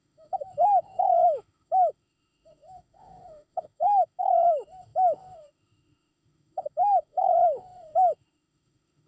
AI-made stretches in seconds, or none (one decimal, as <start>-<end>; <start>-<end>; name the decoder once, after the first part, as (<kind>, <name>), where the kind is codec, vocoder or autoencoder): 0.0-9.1 (autoencoder, DAC-VAE)